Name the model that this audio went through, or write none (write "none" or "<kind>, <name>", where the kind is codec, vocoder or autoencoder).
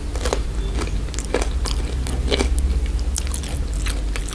none